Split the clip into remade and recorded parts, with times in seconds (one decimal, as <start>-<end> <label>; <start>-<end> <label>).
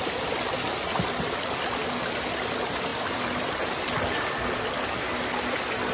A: 0.0-5.9 recorded